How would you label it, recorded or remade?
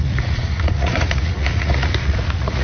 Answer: remade